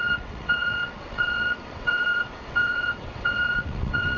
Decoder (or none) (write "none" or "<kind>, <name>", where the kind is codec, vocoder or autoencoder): vocoder, WaveNeXt